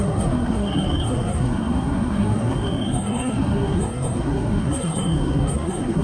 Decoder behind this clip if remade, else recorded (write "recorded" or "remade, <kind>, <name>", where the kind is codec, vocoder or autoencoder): remade, codec, SNAC